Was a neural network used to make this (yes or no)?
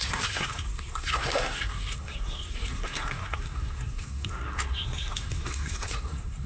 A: yes